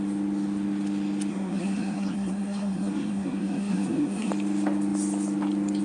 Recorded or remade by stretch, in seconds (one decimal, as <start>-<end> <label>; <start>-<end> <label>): 0.0-1.3 recorded; 1.3-4.3 remade; 4.3-5.8 recorded